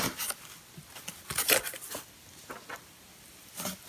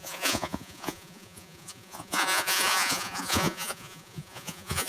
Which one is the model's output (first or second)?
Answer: second